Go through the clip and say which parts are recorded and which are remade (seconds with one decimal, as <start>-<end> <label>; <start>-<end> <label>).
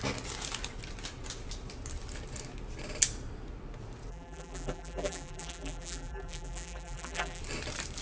0.0-4.1 recorded; 4.1-7.4 remade; 7.4-8.0 recorded